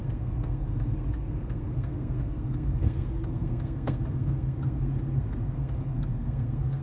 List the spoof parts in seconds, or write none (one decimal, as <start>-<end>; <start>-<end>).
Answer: 0.0-6.8